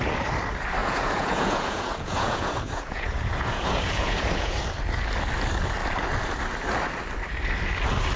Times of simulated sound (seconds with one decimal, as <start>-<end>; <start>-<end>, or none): 0.8-4.6